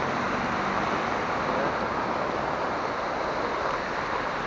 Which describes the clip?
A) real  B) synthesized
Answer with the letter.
A